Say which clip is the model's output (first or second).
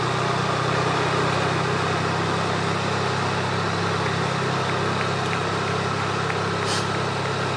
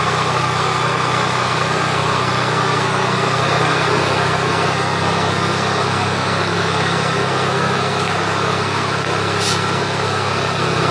second